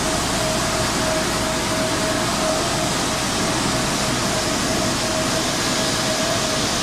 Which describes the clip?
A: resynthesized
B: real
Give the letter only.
B